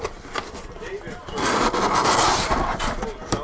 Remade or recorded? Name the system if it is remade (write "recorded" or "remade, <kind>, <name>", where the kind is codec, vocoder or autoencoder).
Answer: recorded